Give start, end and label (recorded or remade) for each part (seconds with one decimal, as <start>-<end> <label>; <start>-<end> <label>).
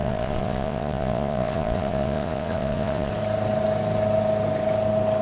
0.0-3.1 remade; 3.1-5.2 recorded